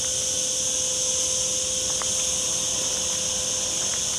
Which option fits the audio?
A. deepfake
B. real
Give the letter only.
B